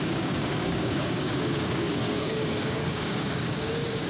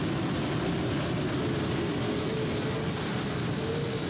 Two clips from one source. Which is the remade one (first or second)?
first